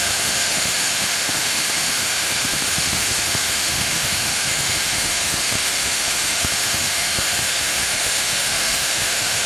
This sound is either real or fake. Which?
fake